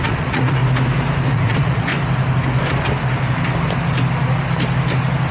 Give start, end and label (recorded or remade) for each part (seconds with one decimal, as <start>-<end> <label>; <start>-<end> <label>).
0.0-0.6 remade; 0.6-1.3 recorded; 1.3-1.9 remade; 1.9-5.3 recorded